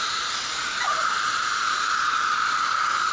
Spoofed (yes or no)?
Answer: no